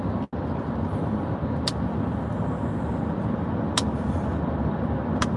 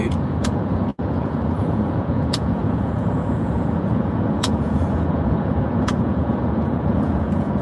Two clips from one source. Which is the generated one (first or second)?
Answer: second